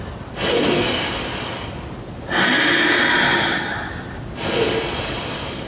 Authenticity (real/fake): real